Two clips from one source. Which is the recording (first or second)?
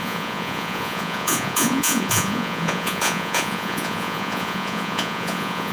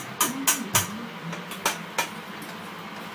second